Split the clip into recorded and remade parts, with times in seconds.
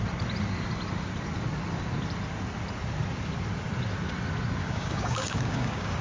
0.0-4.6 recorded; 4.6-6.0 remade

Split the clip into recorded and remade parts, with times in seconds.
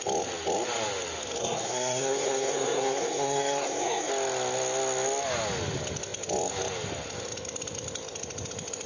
0.0-1.4 recorded; 1.4-4.1 remade; 4.1-8.9 recorded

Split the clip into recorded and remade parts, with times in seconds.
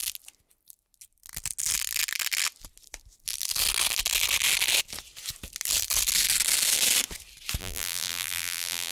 0.0-7.6 recorded; 7.6-8.9 remade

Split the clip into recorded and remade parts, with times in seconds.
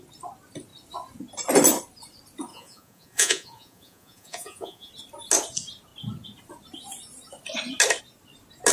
0.0-2.5 recorded; 2.5-4.9 remade; 4.9-8.7 recorded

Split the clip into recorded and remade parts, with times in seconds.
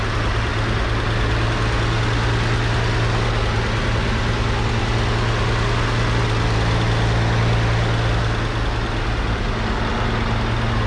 0.0-10.9 recorded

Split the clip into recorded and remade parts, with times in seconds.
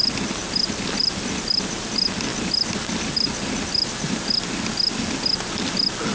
0.0-6.1 recorded